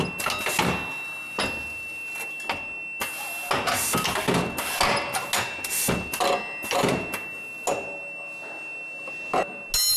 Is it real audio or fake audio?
real